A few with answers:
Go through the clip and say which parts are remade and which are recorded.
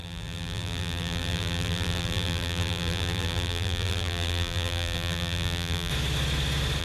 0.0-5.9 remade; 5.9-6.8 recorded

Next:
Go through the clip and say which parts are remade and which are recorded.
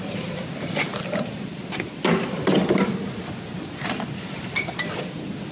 0.0-0.9 recorded; 0.9-1.7 remade; 1.7-5.5 recorded